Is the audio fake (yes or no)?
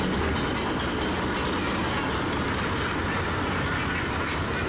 no